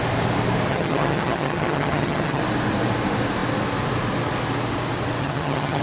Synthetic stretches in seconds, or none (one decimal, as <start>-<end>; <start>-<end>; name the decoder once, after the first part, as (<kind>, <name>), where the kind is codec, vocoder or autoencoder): 0.7-2.4 (vocoder, HiFi-GAN); 5.2-5.8